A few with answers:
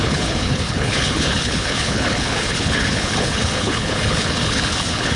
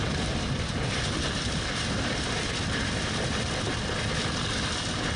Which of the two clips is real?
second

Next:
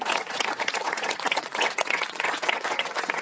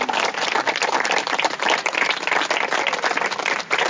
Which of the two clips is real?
second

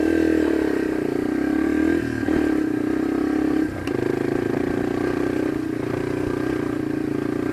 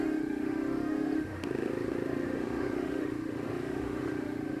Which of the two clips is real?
first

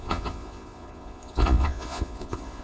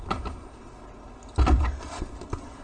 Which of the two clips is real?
second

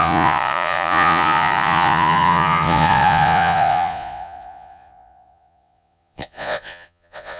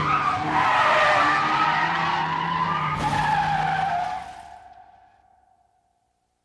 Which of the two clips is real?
second